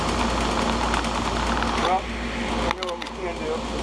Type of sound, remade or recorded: recorded